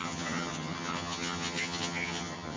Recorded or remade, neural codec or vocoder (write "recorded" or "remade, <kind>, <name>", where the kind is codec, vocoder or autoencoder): remade, vocoder, HiFi-GAN